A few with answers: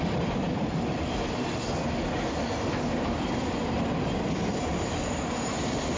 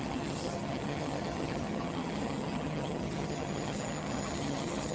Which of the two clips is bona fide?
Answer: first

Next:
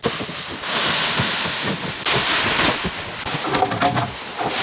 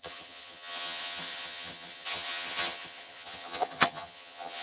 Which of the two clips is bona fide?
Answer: first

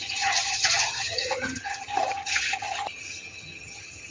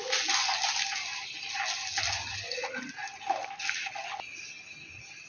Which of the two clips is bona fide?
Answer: second